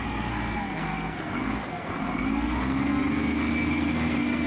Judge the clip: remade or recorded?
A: remade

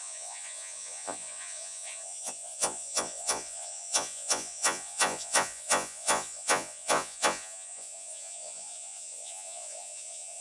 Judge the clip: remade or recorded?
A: remade